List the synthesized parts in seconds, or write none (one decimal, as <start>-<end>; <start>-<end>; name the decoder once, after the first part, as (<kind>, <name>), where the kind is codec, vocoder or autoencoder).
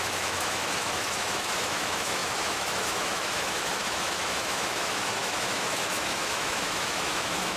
0.0-7.6 (autoencoder, DAC-VAE)